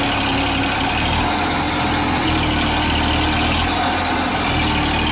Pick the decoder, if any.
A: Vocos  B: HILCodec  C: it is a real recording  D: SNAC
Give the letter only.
C